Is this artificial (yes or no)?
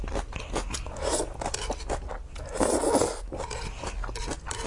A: no